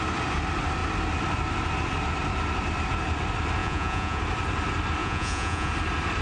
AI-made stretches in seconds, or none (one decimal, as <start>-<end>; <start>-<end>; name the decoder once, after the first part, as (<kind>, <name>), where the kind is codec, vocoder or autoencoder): 3.6-4.2 (vocoder, Vocos); 5.0-5.7